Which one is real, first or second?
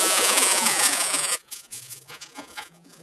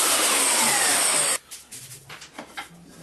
second